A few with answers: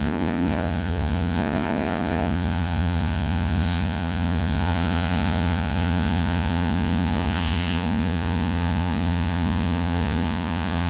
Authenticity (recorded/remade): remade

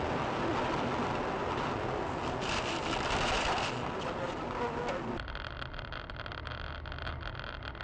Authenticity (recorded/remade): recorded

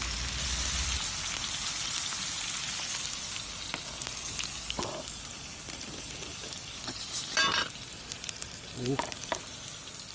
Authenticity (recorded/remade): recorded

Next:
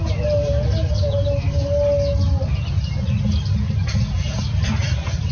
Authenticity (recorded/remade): recorded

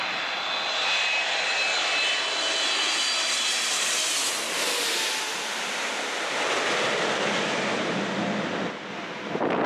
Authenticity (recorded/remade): recorded